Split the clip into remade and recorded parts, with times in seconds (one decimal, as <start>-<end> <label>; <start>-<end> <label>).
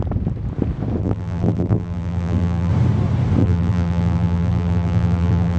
0.0-1.0 recorded; 1.0-2.7 remade; 2.7-3.4 recorded; 3.4-5.6 remade